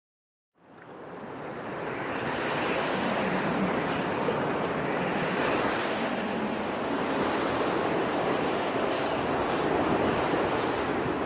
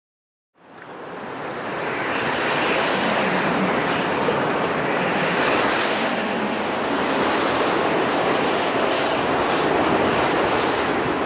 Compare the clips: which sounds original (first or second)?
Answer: second